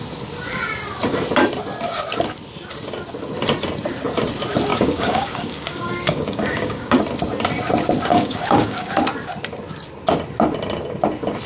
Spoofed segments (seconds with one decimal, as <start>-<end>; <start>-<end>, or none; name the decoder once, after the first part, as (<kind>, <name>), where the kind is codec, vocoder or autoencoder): 4.7-7.0 (codec, DAC); 8.1-9.0